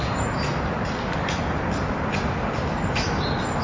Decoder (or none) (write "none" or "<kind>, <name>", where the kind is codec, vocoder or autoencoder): none